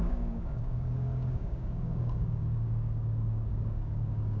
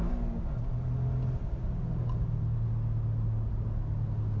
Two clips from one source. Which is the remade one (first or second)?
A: first